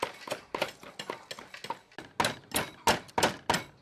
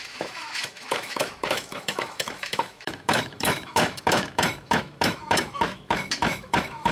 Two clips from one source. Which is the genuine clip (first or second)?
first